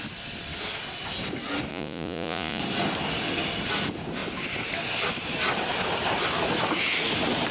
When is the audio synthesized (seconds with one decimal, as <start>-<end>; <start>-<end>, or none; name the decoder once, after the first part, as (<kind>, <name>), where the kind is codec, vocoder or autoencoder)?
1.7-2.6 (vocoder, Vocos)